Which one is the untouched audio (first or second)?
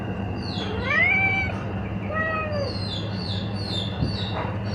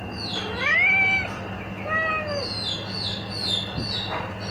second